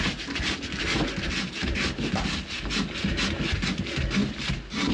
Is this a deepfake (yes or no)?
no